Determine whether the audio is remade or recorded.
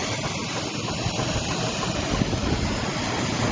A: recorded